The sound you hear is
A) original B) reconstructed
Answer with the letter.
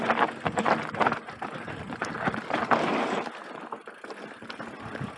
A